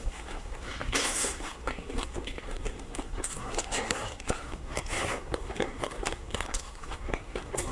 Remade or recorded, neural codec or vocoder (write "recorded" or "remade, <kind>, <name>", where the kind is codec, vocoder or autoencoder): remade, codec, SNAC